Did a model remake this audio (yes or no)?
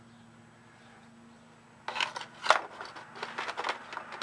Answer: no